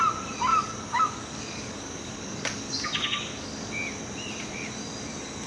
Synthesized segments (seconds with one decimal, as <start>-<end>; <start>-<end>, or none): 0.5-3.7